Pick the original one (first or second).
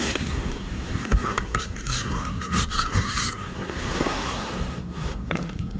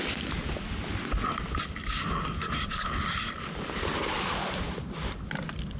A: second